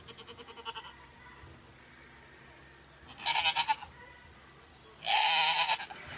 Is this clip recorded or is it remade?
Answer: recorded